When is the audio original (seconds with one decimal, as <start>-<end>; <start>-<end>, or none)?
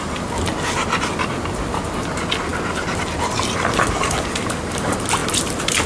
0.0-2.5; 3.0-5.2